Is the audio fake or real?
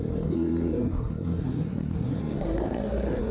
fake